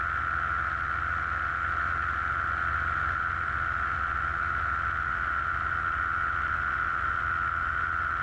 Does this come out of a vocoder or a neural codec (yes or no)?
no